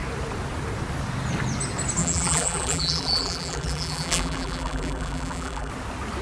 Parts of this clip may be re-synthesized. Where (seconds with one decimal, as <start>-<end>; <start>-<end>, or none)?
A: 2.0-5.7